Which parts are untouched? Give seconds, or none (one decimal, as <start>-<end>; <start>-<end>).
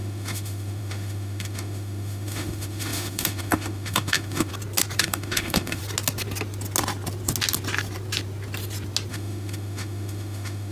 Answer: 4.5-5.0; 5.8-9.1